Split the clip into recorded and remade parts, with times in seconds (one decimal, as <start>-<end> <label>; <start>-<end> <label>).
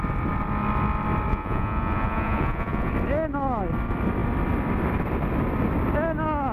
0.0-1.3 recorded; 1.3-2.9 remade; 2.9-6.5 recorded